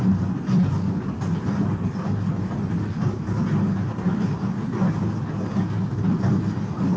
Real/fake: real